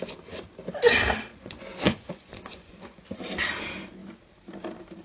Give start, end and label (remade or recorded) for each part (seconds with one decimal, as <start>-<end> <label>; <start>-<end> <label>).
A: 0.0-1.3 recorded; 1.3-3.0 remade; 3.0-5.0 recorded